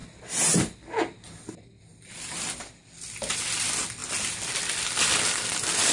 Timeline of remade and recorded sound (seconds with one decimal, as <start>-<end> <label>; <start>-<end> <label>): 0.0-1.5 recorded; 1.5-4.0 remade; 4.0-4.6 recorded; 4.6-5.9 remade